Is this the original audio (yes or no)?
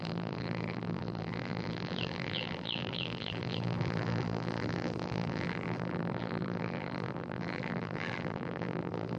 no